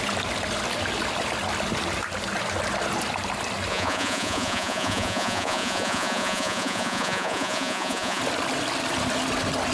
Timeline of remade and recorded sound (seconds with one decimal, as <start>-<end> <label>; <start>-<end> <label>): 0.0-3.7 recorded; 3.7-8.2 remade; 8.2-9.7 recorded